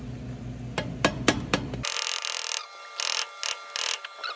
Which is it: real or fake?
real